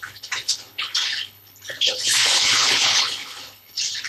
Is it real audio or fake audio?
fake